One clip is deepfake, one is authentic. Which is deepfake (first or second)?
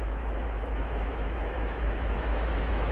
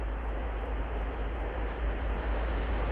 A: first